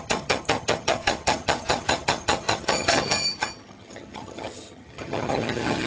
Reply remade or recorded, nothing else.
remade